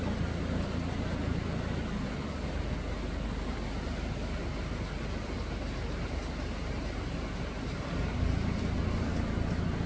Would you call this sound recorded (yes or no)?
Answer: yes